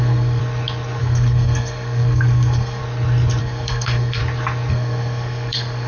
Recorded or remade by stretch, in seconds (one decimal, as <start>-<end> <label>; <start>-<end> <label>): 0.0-0.4 remade; 0.4-1.0 recorded; 1.0-2.8 remade; 2.8-3.4 recorded; 3.4-4.2 remade; 4.2-4.7 recorded; 4.7-5.9 remade